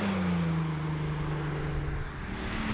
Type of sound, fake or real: real